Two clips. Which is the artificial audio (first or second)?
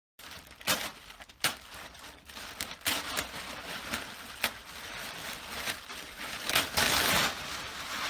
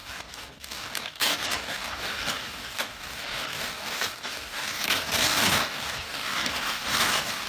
second